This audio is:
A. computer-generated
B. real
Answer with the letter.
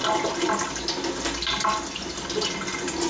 B